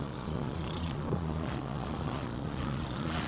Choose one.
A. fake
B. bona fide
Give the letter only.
A